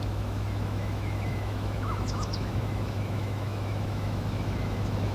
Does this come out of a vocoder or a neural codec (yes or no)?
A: yes